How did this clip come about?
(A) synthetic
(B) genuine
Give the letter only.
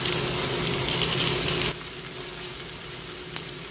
B